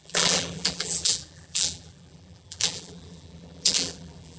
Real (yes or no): no